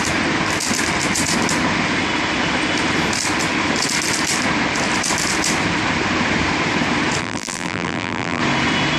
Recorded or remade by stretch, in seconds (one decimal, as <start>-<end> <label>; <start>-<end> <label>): 0.0-7.2 recorded; 7.2-8.4 remade; 8.4-9.0 recorded